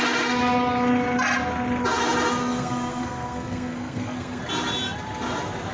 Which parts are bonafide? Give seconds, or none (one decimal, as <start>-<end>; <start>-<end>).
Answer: 0.0-2.4; 4.4-5.7